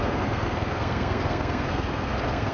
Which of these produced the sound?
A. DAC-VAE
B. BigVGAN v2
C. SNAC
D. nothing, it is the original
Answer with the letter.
C